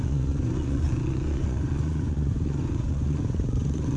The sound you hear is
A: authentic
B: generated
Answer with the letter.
B